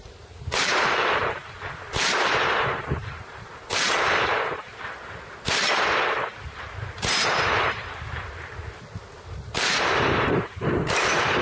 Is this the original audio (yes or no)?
no